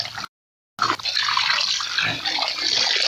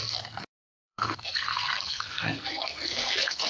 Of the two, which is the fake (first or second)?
second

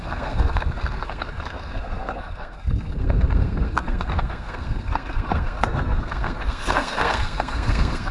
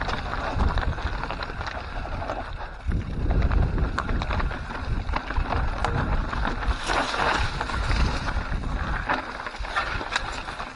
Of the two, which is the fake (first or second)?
first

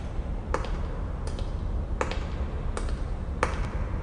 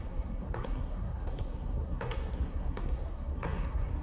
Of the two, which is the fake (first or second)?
second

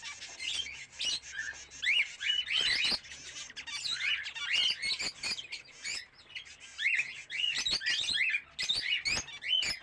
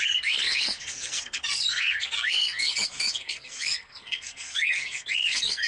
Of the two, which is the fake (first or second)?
second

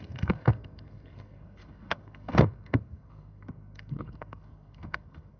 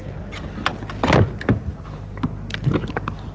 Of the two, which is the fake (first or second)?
first